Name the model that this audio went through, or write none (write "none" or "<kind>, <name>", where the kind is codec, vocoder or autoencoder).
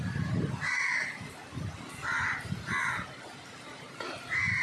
none